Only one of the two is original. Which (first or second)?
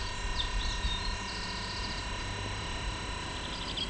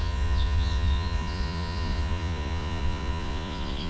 first